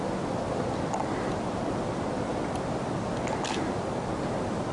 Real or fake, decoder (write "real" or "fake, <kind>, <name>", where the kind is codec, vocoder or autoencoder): real